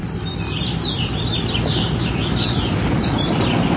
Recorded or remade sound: remade